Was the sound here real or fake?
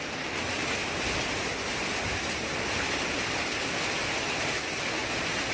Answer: fake